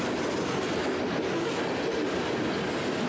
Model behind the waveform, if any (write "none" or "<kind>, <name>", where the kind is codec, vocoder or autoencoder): none